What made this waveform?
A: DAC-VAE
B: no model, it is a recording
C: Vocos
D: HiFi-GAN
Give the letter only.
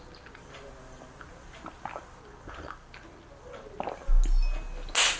B